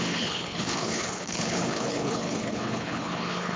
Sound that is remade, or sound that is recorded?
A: remade